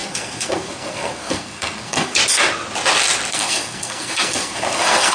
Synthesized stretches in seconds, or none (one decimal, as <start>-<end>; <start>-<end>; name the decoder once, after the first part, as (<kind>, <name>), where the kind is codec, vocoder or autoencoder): 0.0-2.2 (codec, SNAC); 3.3-5.1